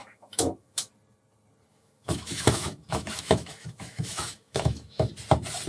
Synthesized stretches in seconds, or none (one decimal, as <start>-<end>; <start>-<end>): 0.0-0.9; 1.7-5.1